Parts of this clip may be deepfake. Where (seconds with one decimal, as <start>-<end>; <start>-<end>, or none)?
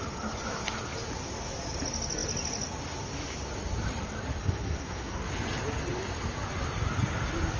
4.4-5.2